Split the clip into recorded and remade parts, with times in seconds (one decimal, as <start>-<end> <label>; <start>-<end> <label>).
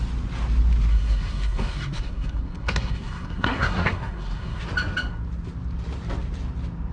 0.0-0.9 recorded; 0.9-4.6 remade; 4.6-6.9 recorded